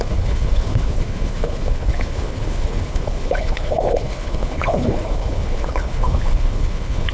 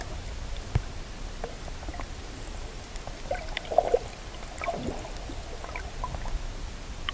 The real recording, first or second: second